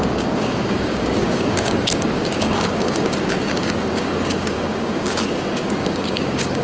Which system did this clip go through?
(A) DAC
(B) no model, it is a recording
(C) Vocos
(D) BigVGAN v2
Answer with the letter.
A